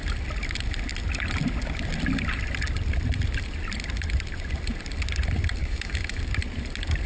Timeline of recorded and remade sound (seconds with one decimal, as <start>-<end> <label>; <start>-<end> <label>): 0.0-5.6 recorded; 5.6-6.2 remade; 6.2-7.1 recorded